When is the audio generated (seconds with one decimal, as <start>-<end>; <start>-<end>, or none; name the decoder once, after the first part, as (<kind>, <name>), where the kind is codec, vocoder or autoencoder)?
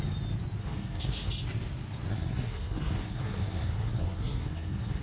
0.6-1.3 (codec, SNAC); 2.1-5.0